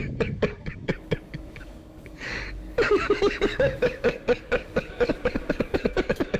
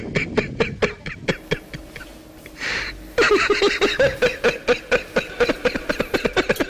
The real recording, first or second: second